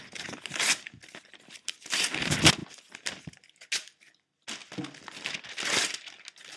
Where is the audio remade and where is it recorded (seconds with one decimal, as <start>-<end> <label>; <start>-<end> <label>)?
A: 0.0-6.6 recorded